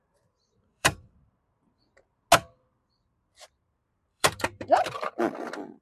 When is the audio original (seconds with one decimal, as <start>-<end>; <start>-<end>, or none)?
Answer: 1.2-4.1; 5.1-5.8